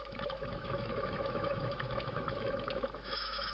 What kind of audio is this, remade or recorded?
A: remade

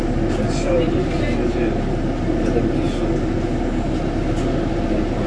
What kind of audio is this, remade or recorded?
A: recorded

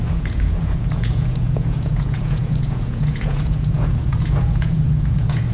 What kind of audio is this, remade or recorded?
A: remade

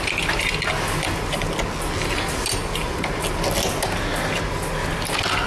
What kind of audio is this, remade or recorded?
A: recorded